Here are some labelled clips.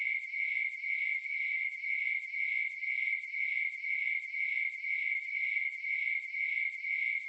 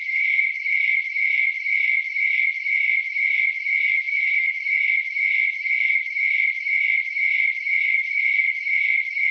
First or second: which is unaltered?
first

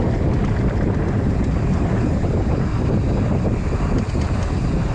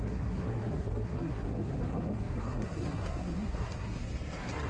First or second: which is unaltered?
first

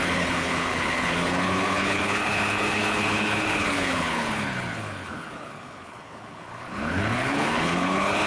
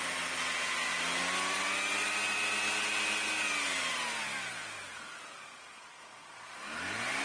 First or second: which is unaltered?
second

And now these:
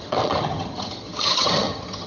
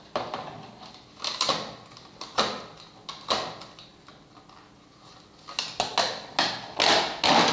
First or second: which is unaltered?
second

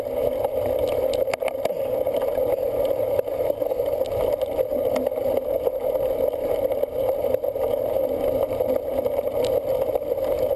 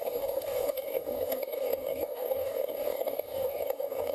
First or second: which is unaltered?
first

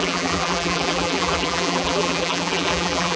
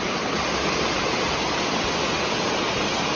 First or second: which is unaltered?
second